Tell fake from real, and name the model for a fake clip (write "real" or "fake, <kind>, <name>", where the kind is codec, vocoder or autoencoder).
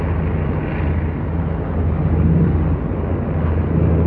real